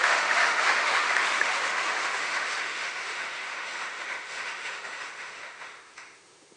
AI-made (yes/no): yes